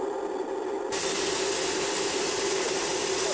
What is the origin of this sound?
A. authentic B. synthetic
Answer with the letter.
A